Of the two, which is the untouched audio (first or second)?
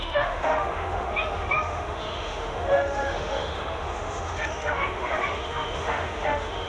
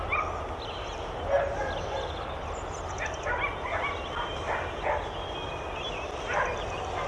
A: second